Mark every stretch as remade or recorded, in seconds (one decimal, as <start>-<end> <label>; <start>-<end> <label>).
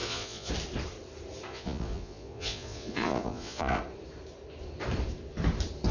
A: 0.0-0.5 remade; 0.5-1.5 recorded; 1.5-3.8 remade; 3.8-5.9 recorded